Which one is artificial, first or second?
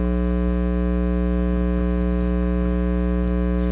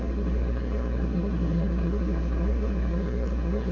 second